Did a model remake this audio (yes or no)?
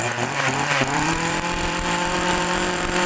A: yes